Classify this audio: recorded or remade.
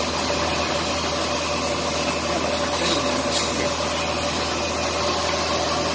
recorded